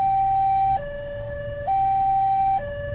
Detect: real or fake fake